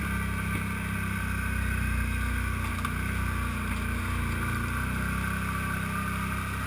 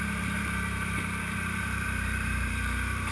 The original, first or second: first